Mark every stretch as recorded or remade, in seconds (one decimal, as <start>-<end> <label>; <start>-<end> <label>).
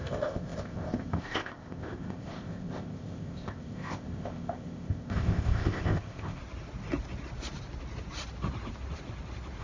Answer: 0.0-6.4 remade; 6.4-9.6 recorded